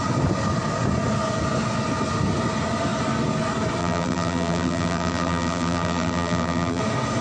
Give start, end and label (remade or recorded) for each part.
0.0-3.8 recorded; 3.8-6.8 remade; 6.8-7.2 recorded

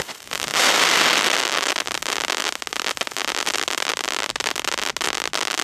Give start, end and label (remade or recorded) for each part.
0.0-5.6 recorded

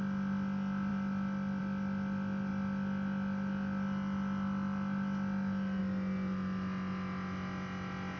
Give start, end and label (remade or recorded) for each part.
0.0-8.2 recorded

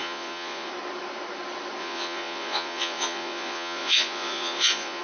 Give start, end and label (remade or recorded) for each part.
0.0-0.7 remade; 0.7-1.8 recorded; 1.8-5.0 remade